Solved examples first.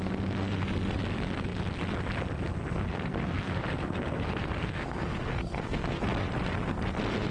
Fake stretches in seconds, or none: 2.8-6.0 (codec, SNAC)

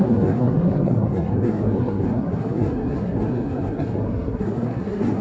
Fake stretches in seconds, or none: 0.0-5.2 (codec, SNAC)

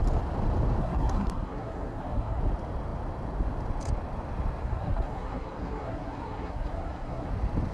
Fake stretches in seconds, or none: 0.8-2.4 (codec, SNAC); 4.6-7.3

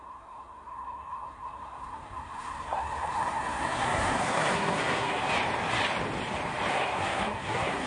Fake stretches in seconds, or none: 0.0-5.2 (codec, SNAC); 6.7-7.9